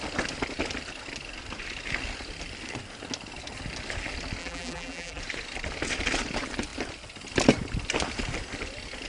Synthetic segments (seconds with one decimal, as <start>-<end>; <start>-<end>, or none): 4.4-5.2